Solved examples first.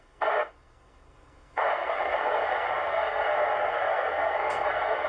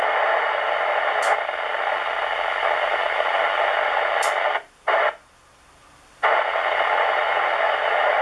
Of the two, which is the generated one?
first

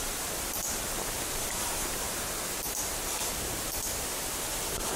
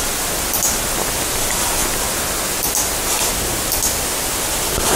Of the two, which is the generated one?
first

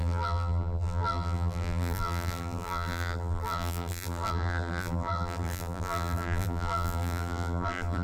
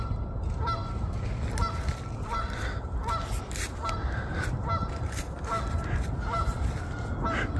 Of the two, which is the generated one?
first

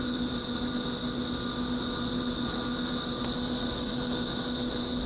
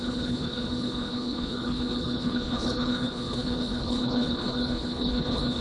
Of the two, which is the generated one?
second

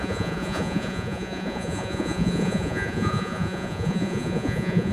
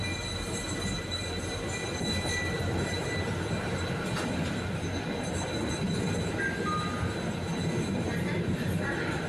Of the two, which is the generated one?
first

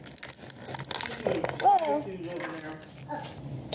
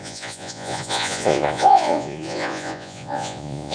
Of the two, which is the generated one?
second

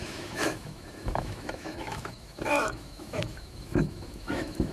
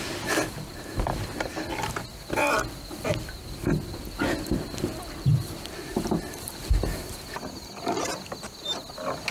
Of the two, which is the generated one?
first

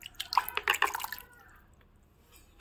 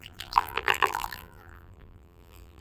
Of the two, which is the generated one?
second